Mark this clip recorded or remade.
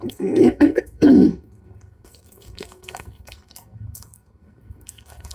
remade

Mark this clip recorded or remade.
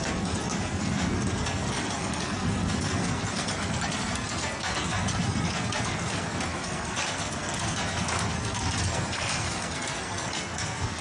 remade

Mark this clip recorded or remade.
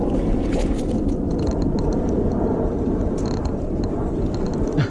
recorded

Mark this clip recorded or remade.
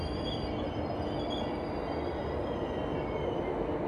recorded